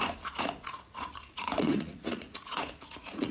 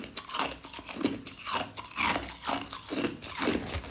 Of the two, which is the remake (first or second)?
first